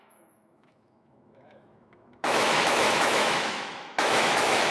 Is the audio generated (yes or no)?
yes